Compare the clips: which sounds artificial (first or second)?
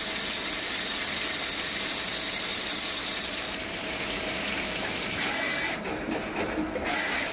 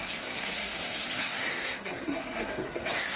second